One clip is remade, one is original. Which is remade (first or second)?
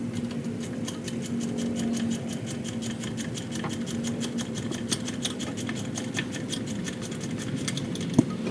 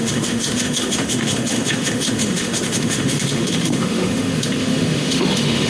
second